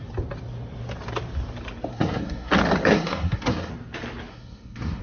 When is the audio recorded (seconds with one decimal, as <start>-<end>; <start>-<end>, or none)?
0.0-1.9; 2.5-2.9; 3.7-4.3